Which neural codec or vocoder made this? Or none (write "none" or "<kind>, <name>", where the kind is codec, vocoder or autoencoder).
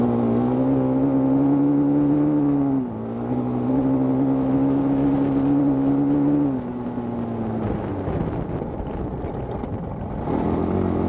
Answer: none